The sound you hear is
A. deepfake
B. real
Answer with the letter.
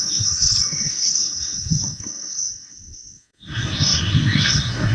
A